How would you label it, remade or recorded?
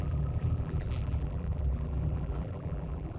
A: remade